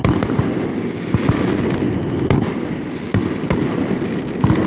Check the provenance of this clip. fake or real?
real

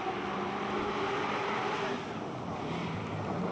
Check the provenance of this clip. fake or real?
real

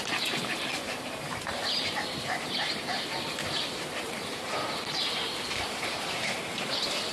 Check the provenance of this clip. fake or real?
fake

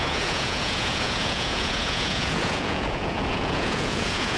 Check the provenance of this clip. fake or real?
fake